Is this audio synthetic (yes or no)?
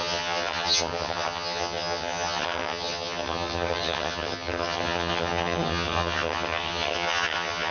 yes